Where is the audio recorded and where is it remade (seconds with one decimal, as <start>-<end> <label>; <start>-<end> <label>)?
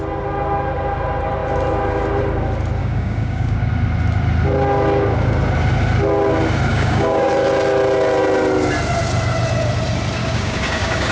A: 0.0-2.8 recorded; 2.8-3.7 remade; 3.7-6.7 recorded; 6.7-7.3 remade; 7.3-10.2 recorded; 10.2-11.1 remade